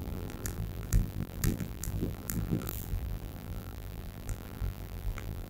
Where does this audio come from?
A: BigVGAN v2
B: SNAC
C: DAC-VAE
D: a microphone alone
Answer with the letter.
A